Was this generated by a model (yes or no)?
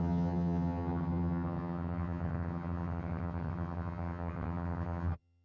yes